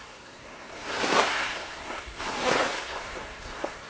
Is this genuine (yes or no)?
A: no